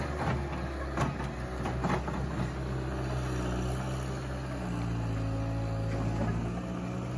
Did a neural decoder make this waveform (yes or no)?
no